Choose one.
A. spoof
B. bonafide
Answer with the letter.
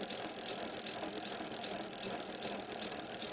B